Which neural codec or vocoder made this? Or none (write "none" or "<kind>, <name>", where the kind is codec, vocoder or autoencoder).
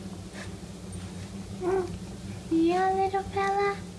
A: none